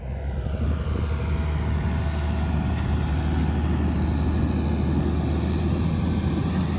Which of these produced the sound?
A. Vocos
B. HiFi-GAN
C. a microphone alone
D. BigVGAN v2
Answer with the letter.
C